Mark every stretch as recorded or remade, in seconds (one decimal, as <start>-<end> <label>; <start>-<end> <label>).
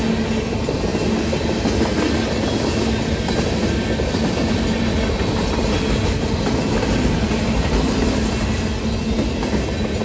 0.0-10.0 recorded